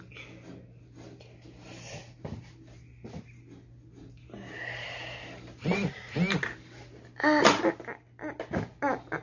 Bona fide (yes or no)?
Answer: yes